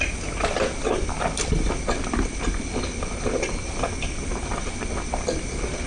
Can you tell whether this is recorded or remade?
recorded